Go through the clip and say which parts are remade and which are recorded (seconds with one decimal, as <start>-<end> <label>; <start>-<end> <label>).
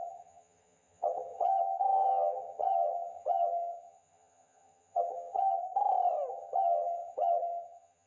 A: 0.0-5.6 remade; 5.6-6.3 recorded; 6.3-8.1 remade